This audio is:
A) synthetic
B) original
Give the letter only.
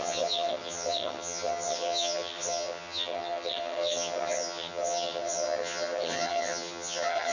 A